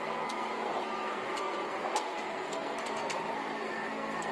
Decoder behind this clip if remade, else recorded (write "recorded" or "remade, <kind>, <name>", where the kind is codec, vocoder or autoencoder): remade, codec, SNAC